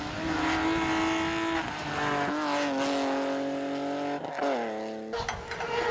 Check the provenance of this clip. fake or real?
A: real